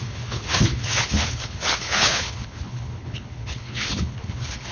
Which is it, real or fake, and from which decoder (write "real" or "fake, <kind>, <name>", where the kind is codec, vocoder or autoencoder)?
fake, codec, HILCodec